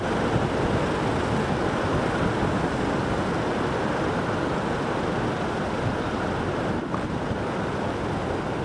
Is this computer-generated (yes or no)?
no